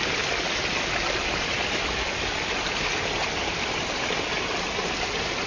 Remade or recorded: recorded